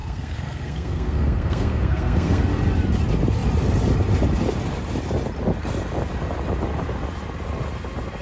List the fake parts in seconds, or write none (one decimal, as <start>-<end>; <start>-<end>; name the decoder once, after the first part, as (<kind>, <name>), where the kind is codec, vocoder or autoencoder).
0.0-2.4 (codec, SNAC)